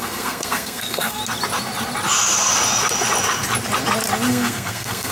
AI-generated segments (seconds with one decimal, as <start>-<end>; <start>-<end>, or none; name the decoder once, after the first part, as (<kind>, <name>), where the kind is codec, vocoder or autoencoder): 0.0-1.2 (codec, SNAC); 4.3-5.1